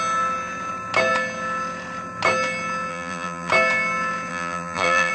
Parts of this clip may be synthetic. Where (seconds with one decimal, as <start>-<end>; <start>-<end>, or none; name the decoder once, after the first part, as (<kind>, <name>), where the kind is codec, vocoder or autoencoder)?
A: 2.9-3.5 (vocoder, BigVGAN v2); 4.3-5.1